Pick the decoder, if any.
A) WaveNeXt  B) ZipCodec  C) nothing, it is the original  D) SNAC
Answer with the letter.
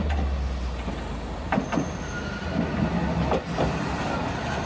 C